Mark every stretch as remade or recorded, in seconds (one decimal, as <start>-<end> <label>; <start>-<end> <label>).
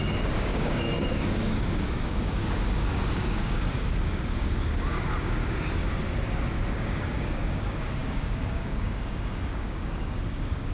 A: 0.0-5.8 remade; 5.8-6.7 recorded; 6.7-10.7 remade